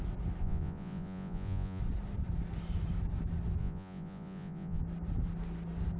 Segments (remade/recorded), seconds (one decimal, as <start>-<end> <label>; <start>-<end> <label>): 0.0-0.4 recorded; 0.4-1.8 remade; 1.8-3.6 recorded; 3.6-4.8 remade; 4.8-6.0 recorded